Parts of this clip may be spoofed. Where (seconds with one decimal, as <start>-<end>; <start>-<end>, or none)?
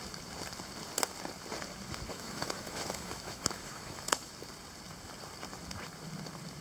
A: 2.1-4.3